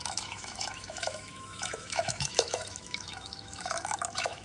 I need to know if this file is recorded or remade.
remade